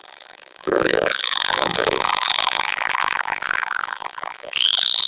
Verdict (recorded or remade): remade